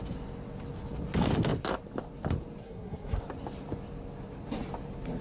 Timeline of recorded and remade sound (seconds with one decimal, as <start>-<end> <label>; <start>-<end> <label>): 0.0-2.6 recorded; 2.6-3.2 remade; 3.2-5.2 recorded